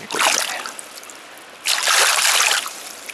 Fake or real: real